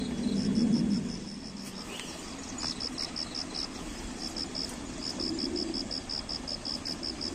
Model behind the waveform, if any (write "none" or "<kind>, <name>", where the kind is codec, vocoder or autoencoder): none